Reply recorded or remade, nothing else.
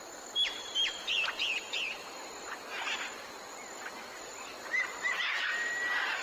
recorded